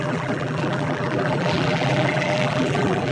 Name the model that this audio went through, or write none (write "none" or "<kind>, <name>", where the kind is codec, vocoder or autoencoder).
vocoder, BigVGAN v2